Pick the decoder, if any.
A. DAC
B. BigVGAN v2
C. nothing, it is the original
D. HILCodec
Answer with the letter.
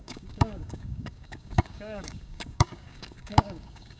A